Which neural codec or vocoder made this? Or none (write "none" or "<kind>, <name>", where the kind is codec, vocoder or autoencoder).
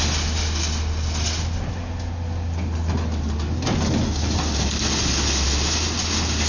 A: none